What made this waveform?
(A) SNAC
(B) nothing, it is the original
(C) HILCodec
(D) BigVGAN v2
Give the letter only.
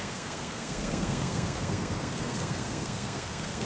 A